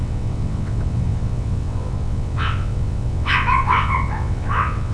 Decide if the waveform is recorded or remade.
remade